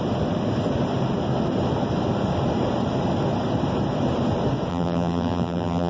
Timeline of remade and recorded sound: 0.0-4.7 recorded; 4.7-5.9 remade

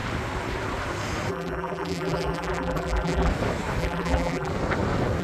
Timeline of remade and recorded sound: 0.0-1.3 recorded; 1.3-3.3 remade; 3.3-3.8 recorded; 3.8-4.5 remade; 4.5-5.2 recorded

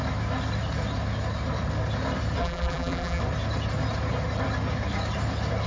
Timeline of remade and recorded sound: 0.0-2.4 recorded; 2.4-3.2 remade; 3.2-5.7 recorded

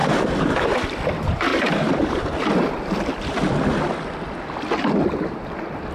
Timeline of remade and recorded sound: 0.0-0.7 remade; 0.7-1.5 recorded; 1.5-2.2 remade; 2.2-5.9 recorded